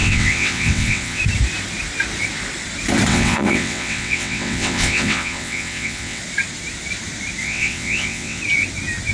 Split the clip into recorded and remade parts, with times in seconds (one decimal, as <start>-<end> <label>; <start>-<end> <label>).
0.0-1.2 remade; 1.2-3.1 recorded; 3.1-6.2 remade; 6.2-7.4 recorded; 7.4-8.4 remade; 8.4-9.1 recorded